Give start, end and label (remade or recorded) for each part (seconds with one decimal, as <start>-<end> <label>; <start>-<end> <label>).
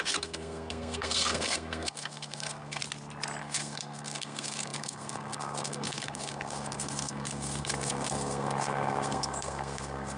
0.0-2.8 remade; 2.8-3.4 recorded; 3.4-10.2 remade